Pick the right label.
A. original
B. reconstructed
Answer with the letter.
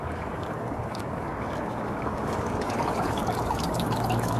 B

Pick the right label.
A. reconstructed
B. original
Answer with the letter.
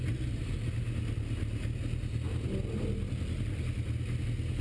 B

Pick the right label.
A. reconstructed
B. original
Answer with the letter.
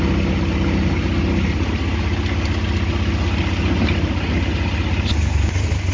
B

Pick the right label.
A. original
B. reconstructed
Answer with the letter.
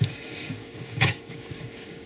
B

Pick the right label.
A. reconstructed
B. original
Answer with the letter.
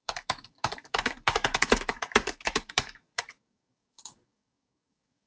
A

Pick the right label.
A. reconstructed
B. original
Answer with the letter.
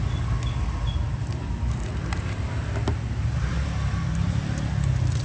B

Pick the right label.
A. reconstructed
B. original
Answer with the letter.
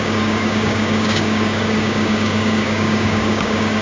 A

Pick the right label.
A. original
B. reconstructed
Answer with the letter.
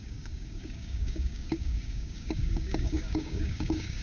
B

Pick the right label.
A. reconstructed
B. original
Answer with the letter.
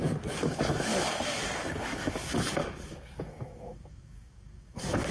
A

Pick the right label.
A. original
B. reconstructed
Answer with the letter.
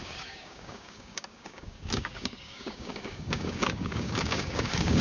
B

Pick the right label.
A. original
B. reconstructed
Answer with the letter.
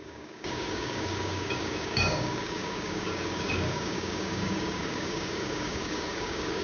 B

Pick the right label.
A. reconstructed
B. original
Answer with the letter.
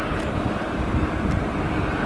B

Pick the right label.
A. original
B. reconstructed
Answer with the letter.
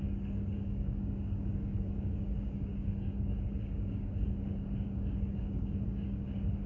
B